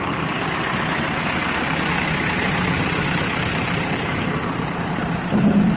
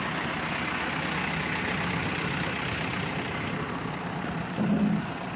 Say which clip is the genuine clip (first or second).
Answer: second